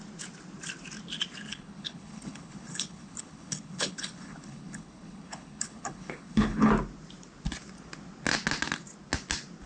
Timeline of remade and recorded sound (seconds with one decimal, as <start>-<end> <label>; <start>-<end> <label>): 0.0-1.5 recorded; 1.5-6.7 remade; 6.7-9.7 recorded